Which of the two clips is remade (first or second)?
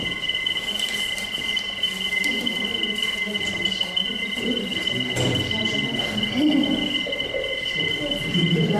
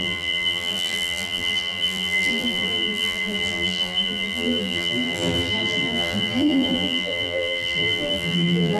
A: second